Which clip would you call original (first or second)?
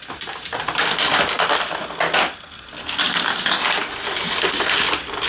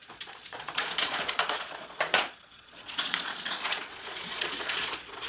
first